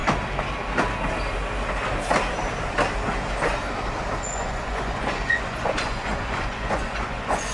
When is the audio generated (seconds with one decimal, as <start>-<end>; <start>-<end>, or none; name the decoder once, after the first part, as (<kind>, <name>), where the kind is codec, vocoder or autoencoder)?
4.2-7.5 (vocoder, Vocos)